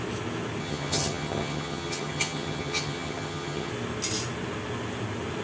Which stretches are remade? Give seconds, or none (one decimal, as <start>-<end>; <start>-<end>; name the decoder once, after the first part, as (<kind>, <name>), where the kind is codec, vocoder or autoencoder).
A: 0.6-3.7 (vocoder, HiFi-GAN)